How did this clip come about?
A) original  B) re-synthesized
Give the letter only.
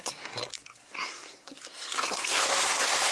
B